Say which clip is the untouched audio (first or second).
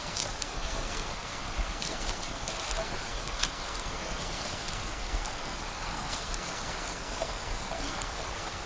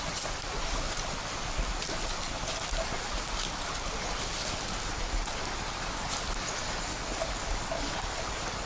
second